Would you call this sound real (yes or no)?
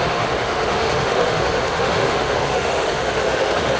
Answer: no